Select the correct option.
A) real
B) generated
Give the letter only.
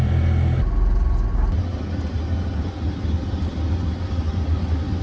A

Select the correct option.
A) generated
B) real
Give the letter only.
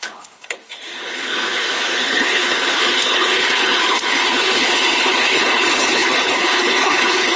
A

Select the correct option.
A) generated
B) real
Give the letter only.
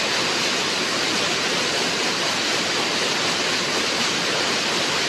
B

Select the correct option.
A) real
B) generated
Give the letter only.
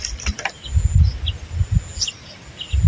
A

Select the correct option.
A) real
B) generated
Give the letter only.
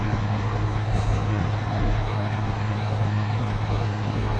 B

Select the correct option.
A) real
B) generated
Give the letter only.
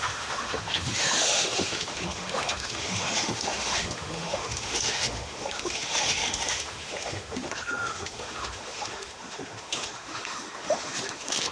B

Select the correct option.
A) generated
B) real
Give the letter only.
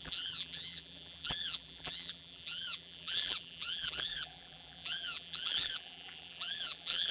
A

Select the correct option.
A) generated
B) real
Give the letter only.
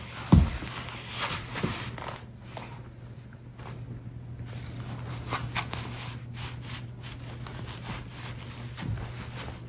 B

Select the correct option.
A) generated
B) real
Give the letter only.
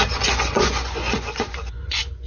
A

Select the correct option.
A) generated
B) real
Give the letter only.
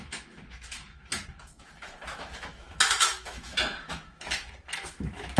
A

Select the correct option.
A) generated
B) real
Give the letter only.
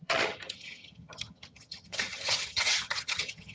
A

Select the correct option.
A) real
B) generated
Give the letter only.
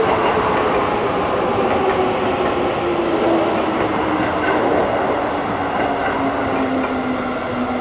A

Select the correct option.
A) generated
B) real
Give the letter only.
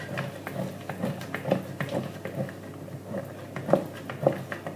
B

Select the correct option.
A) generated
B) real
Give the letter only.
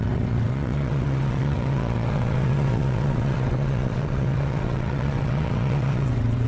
A